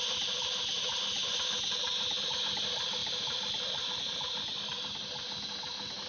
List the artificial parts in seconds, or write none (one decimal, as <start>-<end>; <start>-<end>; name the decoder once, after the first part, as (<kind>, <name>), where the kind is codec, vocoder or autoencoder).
none